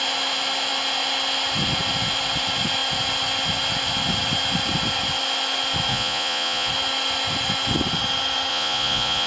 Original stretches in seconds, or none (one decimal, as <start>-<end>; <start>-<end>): 0.0-5.9; 6.7-8.5

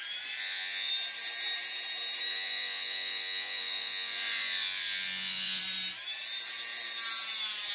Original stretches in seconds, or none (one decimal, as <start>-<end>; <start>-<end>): 0.0-0.4; 0.9-2.3; 5.6-7.7